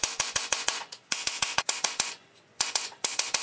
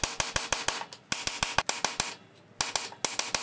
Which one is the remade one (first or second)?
first